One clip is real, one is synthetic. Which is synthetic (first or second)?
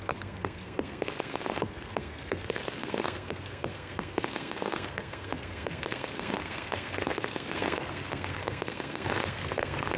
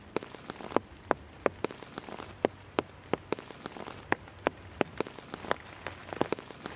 first